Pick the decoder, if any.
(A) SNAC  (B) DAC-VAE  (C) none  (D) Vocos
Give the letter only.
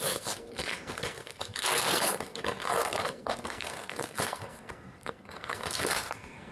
A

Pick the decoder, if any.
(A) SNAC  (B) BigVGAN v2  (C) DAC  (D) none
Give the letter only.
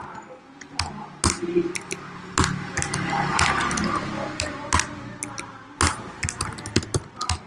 D